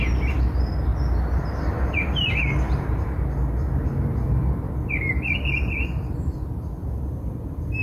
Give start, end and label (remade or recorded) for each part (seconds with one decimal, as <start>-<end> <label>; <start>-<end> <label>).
0.0-7.8 recorded